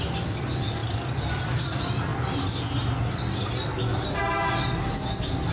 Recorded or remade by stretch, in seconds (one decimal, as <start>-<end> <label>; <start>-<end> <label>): 0.0-5.5 recorded